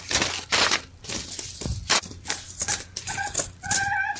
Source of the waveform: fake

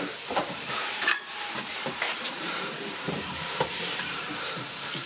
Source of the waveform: fake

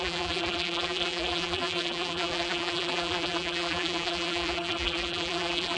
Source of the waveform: fake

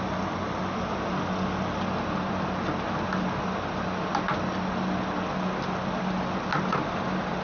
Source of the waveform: real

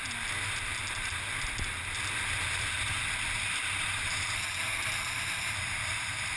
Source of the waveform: real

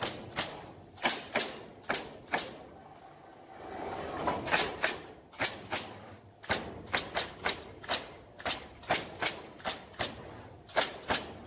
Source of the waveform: real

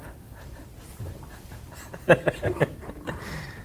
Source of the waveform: fake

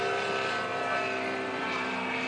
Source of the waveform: real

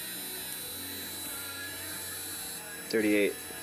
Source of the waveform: real